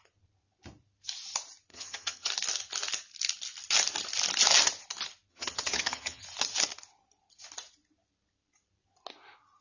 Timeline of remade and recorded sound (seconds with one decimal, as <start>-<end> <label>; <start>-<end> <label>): 0.0-1.7 recorded; 1.7-2.3 remade; 2.3-5.3 recorded; 5.3-6.2 remade; 6.2-9.6 recorded